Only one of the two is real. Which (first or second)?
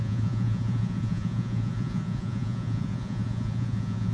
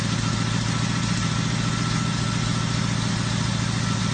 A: second